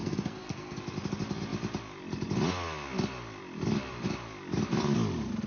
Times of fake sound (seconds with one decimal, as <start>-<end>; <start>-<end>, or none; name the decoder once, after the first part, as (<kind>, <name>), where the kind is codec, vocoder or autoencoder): 0.0-0.8 (codec, SNAC)